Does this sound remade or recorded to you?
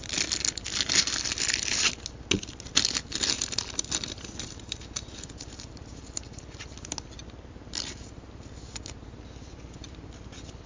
recorded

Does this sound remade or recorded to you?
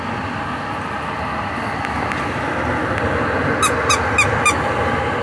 recorded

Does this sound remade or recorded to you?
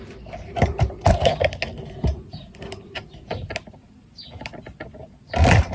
recorded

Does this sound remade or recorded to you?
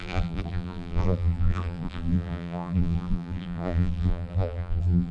remade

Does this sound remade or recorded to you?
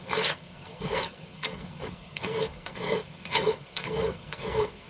remade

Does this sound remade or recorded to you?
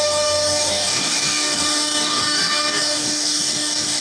remade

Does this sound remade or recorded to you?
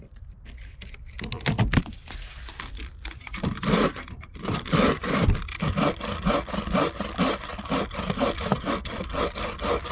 recorded